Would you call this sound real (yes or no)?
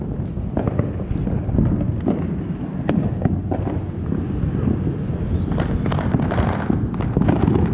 yes